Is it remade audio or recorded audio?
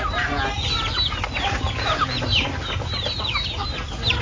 recorded